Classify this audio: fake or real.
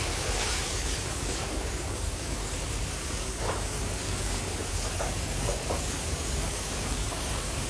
fake